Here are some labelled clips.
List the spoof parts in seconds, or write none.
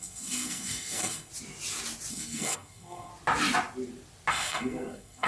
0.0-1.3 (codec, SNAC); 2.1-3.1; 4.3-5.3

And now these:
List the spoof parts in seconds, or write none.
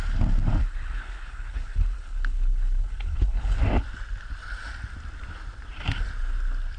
0.6-3.6 (codec, HILCodec)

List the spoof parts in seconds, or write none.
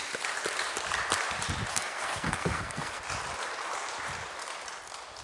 1.7-3.0 (codec, SNAC)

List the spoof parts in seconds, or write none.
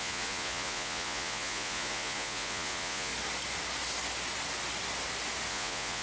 0.0-3.1 (vocoder, Vocos); 5.5-6.0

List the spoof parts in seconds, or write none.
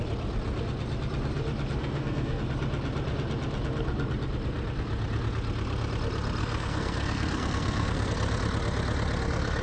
1.8-2.4 (codec, SNAC); 6.4-8.1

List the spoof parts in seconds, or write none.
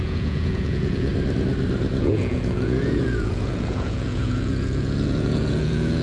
0.0-1.1 (vocoder, Vocos); 2.0-6.0